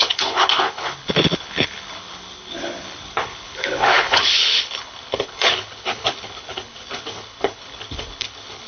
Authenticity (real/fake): fake